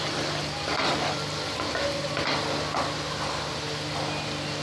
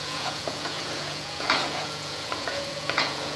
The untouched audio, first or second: first